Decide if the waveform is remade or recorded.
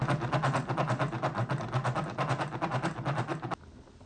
recorded